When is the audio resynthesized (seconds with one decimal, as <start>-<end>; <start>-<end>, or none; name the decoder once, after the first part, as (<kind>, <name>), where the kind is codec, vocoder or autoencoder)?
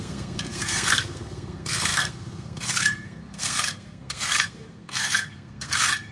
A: 0.0-6.1 (codec, SNAC)